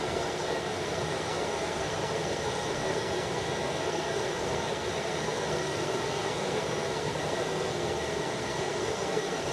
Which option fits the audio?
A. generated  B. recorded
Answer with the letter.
A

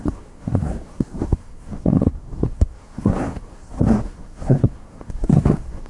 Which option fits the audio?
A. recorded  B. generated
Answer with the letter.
B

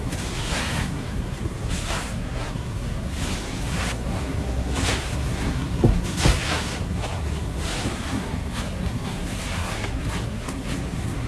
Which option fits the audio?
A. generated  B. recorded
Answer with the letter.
A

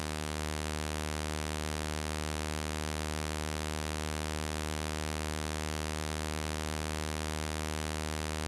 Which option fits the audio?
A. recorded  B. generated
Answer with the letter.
A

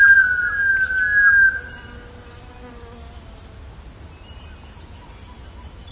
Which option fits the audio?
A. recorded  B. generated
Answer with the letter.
A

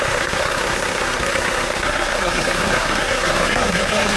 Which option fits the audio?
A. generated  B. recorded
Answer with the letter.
A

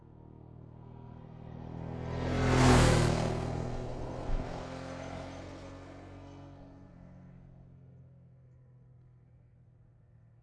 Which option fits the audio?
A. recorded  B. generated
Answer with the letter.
B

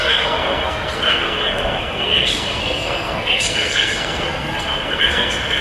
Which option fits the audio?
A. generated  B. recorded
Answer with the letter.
A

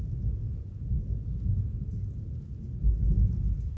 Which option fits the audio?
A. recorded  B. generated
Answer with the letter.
A